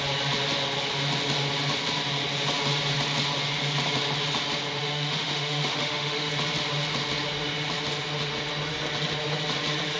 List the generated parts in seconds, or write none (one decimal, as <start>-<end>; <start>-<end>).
4.8-6.3